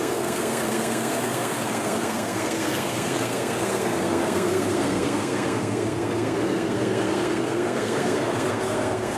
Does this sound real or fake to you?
fake